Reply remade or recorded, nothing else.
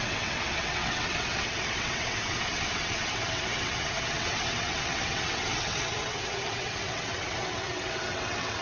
remade